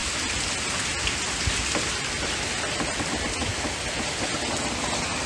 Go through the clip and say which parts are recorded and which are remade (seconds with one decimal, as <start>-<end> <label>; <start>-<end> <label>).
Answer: 0.0-5.3 recorded